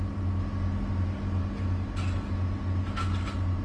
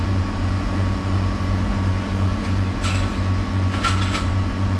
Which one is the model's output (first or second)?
second